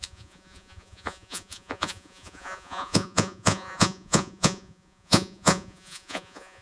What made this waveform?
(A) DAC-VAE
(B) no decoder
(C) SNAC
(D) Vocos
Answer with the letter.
D